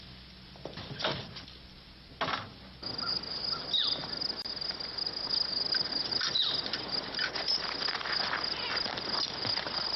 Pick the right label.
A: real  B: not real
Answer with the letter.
A